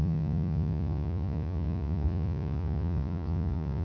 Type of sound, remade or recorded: remade